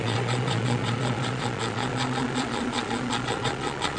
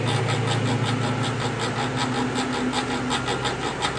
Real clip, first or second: second